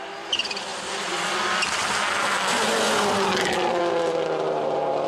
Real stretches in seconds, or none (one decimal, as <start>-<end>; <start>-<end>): 0.0-5.1